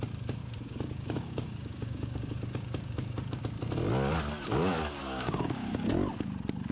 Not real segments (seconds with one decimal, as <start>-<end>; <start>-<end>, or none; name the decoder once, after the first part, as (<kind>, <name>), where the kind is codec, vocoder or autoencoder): 0.4-3.4 (codec, DAC); 5.0-5.9